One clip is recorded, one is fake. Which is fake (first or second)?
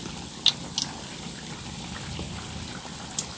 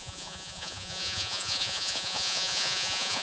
second